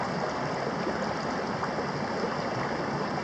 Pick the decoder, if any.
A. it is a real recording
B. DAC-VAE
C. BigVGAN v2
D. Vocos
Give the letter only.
A